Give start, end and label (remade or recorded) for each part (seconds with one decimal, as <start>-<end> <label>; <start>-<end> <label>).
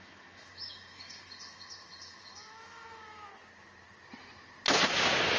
0.0-3.3 remade; 3.3-5.4 recorded